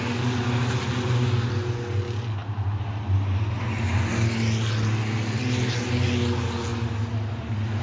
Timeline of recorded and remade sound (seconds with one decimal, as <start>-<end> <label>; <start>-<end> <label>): 0.0-7.8 recorded